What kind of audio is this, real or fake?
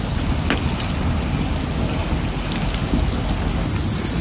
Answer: real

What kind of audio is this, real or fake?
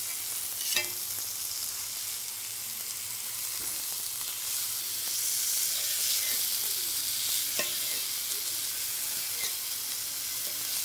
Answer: real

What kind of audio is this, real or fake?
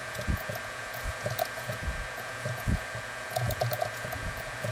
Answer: fake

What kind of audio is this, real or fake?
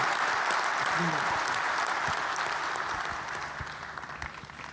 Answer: real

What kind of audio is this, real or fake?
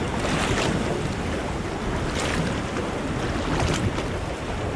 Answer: real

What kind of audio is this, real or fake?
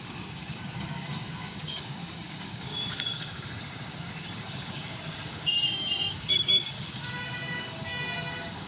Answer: fake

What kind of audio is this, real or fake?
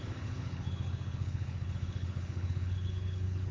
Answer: fake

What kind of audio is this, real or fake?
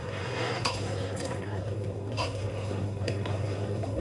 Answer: fake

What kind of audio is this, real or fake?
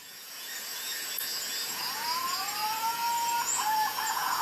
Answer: fake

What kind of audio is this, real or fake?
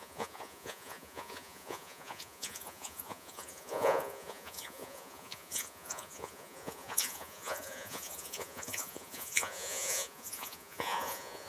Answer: fake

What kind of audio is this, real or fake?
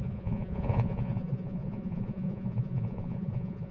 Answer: fake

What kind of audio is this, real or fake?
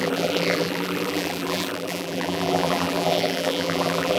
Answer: fake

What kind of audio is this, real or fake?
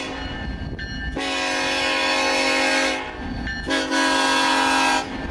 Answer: real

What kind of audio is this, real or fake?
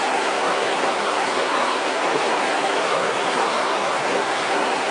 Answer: fake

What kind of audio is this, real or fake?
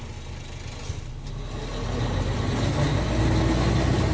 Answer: real